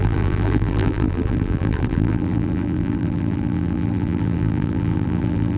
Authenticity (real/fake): fake